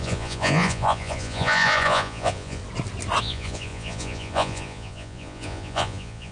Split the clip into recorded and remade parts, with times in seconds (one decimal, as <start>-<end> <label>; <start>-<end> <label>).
0.0-2.6 remade; 2.6-3.2 recorded; 3.2-6.3 remade